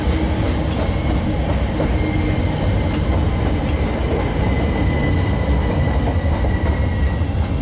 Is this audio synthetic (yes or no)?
no